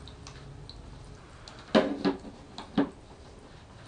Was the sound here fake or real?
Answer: real